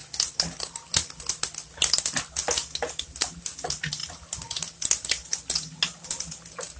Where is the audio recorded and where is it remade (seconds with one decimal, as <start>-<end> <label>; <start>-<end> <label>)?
0.0-6.8 recorded

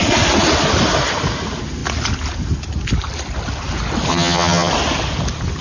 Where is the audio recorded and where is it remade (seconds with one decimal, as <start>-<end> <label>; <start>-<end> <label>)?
0.0-4.1 recorded; 4.1-4.7 remade; 4.7-5.6 recorded

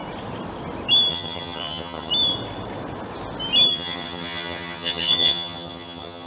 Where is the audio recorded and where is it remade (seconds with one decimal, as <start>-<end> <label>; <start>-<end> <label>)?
0.0-1.1 recorded; 1.1-2.1 remade; 2.1-3.7 recorded; 3.7-6.3 remade

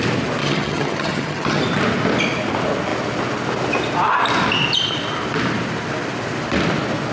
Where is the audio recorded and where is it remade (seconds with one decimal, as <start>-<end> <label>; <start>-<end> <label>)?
0.0-0.4 recorded; 0.4-1.6 remade; 1.6-7.1 recorded

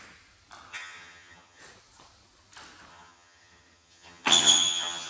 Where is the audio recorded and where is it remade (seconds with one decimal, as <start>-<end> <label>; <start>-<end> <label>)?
0.0-0.7 recorded; 0.7-1.6 remade; 1.6-2.9 recorded; 2.9-5.1 remade

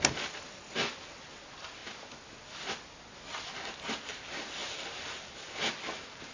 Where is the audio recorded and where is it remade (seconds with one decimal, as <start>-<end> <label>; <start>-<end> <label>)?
0.0-6.3 recorded

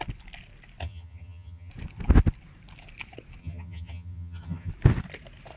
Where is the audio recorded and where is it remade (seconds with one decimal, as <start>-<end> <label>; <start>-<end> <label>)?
0.0-0.8 recorded; 0.8-1.7 remade; 1.7-3.4 recorded; 3.4-4.7 remade; 4.7-5.6 recorded